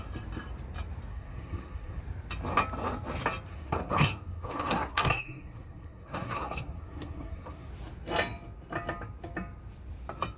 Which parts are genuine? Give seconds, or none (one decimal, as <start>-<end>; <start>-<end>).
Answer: 0.0-1.1; 2.0-3.5; 7.7-10.4